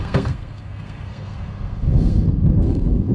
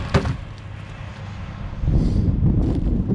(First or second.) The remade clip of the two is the first